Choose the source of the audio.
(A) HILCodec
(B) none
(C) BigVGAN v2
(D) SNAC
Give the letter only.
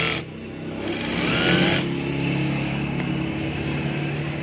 B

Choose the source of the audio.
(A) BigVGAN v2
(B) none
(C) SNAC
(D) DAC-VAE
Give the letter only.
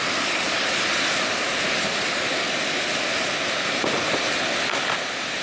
B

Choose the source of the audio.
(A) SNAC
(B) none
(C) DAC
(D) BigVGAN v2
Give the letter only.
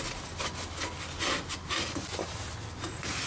B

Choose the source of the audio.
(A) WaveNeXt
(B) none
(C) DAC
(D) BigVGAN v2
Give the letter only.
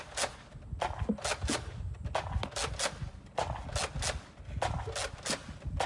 B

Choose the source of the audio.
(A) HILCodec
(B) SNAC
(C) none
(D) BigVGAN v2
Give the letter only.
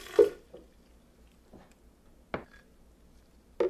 C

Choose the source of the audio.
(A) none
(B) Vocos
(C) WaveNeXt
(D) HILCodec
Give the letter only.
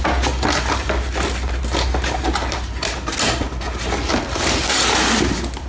A